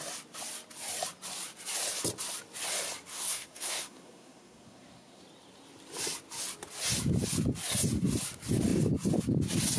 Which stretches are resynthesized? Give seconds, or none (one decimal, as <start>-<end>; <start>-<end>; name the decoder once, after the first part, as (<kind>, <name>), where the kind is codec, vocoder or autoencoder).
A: 3.1-5.2 (codec, SNAC)